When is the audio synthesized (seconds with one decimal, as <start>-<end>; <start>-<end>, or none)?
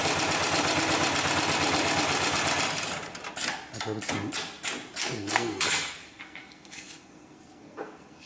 5.0-8.3